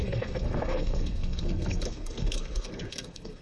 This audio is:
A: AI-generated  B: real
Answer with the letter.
A